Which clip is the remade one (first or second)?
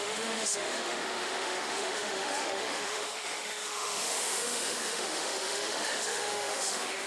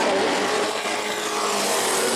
first